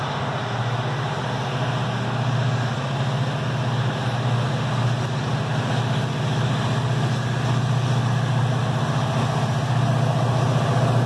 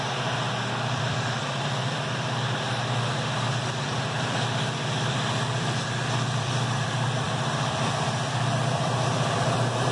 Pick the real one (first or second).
first